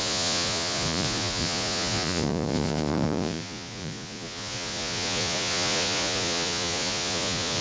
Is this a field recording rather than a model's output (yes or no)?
no